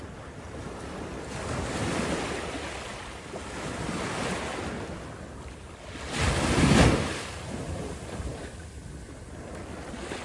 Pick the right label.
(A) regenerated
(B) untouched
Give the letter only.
B